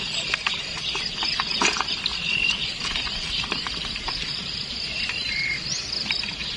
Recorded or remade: remade